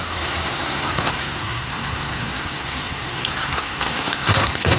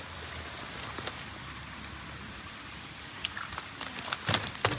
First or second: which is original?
second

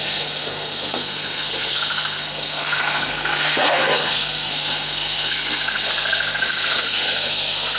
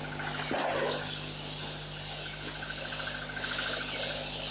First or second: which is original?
second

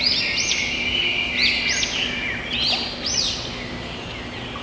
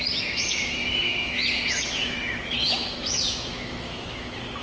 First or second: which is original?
first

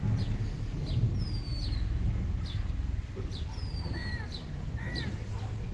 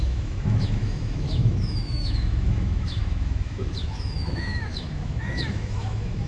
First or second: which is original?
first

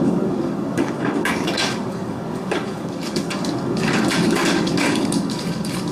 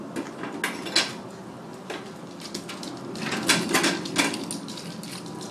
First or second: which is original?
second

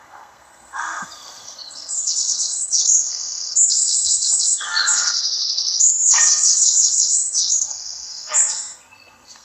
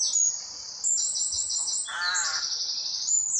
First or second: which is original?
second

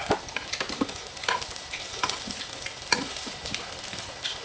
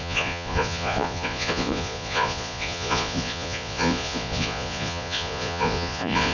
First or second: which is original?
first